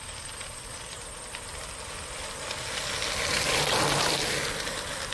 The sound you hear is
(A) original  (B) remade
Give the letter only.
A